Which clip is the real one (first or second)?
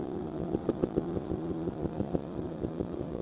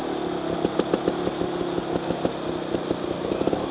second